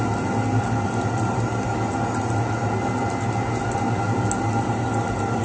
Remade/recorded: recorded